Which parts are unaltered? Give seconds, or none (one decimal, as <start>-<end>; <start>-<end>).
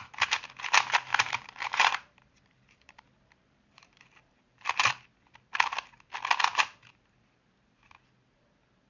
0.0-1.1; 4.9-8.9